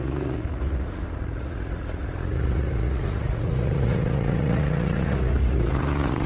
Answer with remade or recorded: remade